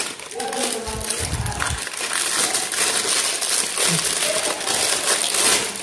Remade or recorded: recorded